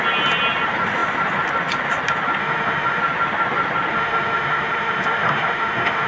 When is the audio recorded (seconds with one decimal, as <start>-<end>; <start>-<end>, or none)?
0.0-2.4; 3.0-3.9